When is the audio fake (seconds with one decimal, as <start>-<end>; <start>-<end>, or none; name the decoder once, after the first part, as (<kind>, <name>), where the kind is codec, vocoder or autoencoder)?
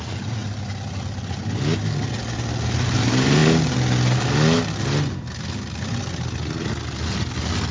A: none